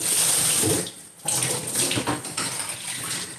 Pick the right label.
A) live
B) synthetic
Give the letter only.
A